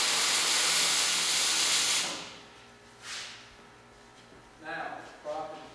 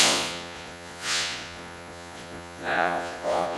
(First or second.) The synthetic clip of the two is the second